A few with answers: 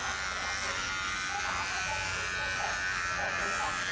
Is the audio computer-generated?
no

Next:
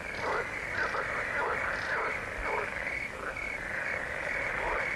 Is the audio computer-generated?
no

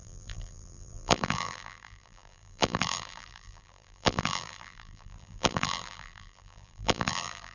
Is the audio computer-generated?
yes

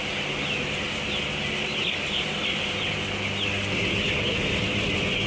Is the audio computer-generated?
no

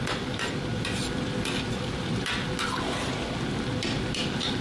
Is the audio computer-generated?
no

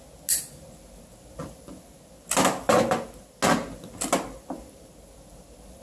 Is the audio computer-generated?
no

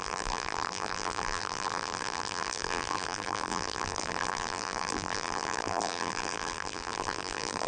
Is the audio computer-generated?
yes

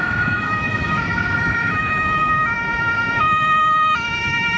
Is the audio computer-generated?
yes